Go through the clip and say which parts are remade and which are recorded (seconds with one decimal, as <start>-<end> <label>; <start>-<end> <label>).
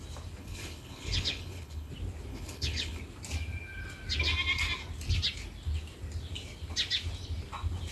0.0-0.4 recorded; 0.4-1.9 remade; 1.9-2.3 recorded; 2.3-3.0 remade; 3.0-7.9 recorded